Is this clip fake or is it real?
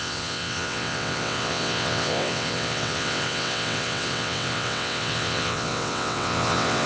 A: fake